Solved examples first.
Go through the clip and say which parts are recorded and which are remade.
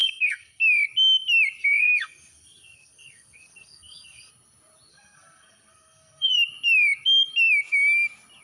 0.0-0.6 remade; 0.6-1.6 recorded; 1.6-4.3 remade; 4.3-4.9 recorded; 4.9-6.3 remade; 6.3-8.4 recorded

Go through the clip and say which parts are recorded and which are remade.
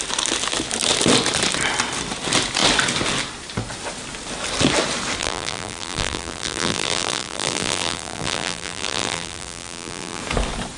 0.0-5.2 recorded; 5.2-10.2 remade; 10.2-10.8 recorded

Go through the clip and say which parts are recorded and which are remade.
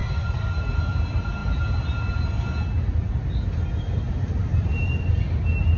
0.0-5.8 recorded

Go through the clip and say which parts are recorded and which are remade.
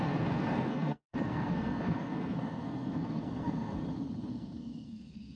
0.0-3.8 remade; 3.8-4.3 recorded; 4.3-5.4 remade